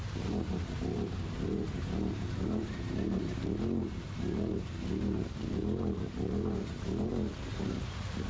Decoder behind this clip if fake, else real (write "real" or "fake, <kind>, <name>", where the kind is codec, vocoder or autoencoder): fake, vocoder, BigVGAN v2